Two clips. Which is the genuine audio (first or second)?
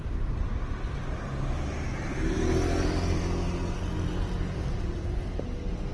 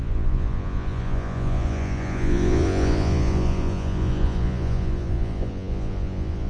first